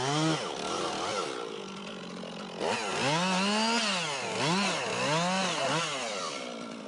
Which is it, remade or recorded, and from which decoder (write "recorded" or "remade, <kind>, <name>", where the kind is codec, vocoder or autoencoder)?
recorded